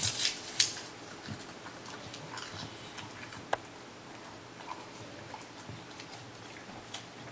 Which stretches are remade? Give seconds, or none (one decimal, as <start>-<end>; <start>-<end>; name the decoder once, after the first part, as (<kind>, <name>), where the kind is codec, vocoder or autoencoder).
0.0-1.0 (vocoder, BigVGAN v2)

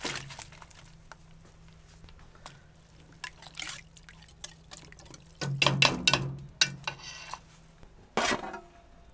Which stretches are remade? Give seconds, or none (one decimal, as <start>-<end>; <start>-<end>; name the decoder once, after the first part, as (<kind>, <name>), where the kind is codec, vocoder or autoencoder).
none

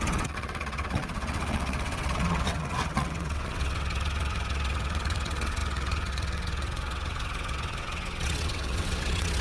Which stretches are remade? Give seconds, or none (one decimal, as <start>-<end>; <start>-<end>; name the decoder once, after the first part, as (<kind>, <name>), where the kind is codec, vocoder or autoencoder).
0.0-9.4 (vocoder, WaveNeXt)

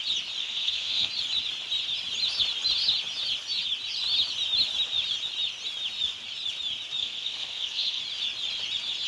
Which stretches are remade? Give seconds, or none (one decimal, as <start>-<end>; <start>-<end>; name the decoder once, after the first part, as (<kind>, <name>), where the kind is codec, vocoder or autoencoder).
0.4-1.1 (codec, SNAC); 7.0-8.0

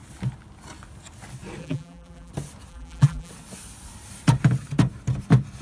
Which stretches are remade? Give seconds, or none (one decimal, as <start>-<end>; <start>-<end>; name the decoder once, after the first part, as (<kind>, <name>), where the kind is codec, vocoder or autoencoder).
1.6-2.3 (vocoder, BigVGAN v2); 2.7-3.3